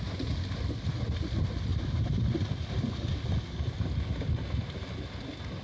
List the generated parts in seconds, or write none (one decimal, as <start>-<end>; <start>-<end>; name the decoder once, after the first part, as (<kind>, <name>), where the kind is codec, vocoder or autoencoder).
none